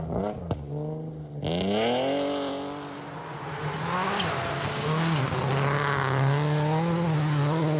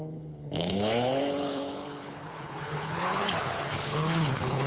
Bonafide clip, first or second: first